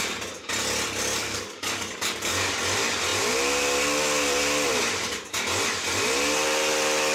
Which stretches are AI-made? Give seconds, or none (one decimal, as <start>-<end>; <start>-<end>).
1.2-2.5